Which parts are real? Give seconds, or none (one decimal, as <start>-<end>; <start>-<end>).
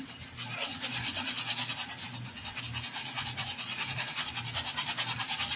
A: 0.0-0.6; 1.5-2.0; 2.6-3.0; 4.3-5.6